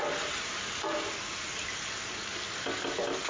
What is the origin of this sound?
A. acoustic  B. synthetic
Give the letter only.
A